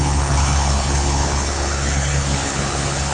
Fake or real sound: fake